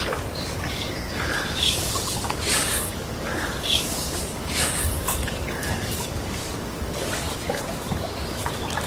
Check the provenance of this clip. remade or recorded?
remade